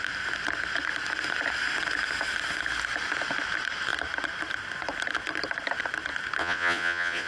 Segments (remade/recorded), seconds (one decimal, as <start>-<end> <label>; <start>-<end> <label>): 0.0-6.4 recorded; 6.4-7.3 remade